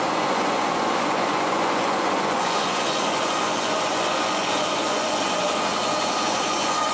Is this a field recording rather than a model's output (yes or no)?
no